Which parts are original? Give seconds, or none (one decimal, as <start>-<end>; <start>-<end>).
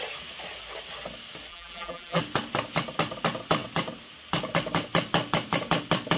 0.0-1.5; 2.2-6.2